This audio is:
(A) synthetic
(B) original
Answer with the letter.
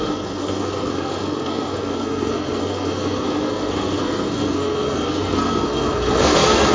A